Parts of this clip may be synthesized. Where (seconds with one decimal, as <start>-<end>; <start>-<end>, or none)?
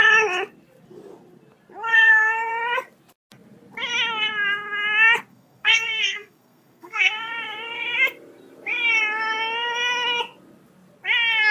1.9-2.5; 5.3-7.3